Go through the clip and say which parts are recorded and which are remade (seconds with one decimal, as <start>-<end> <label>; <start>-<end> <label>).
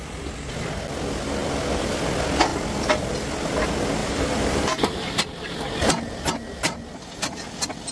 0.0-4.0 recorded; 4.0-5.0 remade; 5.0-7.9 recorded